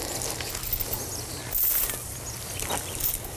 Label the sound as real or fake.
real